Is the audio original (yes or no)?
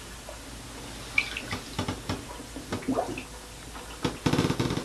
yes